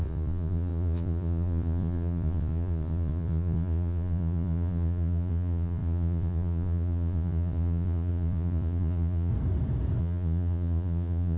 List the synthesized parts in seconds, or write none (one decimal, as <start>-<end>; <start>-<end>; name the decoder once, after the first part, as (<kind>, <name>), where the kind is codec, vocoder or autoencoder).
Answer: 0.0-9.3 (vocoder, Vocos); 10.0-11.4